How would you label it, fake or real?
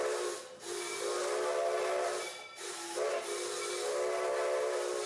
real